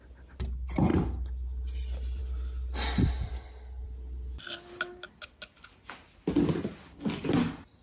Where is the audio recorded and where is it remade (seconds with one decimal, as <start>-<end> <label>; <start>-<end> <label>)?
0.0-7.8 recorded